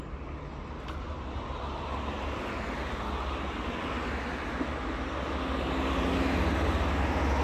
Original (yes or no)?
yes